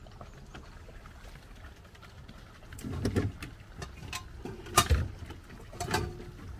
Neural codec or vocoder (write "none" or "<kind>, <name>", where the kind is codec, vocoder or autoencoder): none